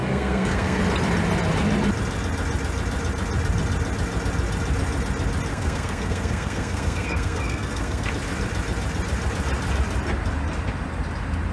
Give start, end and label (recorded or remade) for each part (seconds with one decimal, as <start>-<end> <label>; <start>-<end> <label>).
0.0-0.8 remade; 0.8-5.5 recorded; 5.5-8.1 remade; 8.1-11.5 recorded